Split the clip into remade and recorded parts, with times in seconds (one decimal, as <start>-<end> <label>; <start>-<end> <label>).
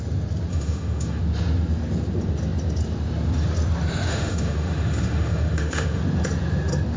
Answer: 0.0-0.5 recorded; 0.5-1.2 remade; 1.2-4.1 recorded; 4.1-6.0 remade; 6.0-7.0 recorded